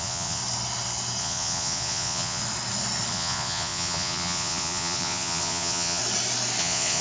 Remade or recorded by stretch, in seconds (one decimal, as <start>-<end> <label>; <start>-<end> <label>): 0.0-0.4 remade; 0.4-1.2 recorded; 1.2-2.4 remade; 2.4-3.1 recorded; 3.1-6.0 remade; 6.0-6.6 recorded; 6.6-7.0 remade